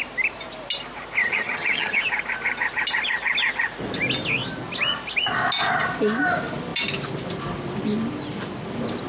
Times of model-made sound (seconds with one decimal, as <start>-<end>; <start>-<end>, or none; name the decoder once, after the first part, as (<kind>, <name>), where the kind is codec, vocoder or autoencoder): 1.2-2.0 (vocoder, HiFi-GAN)